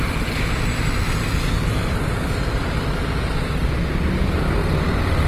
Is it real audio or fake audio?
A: real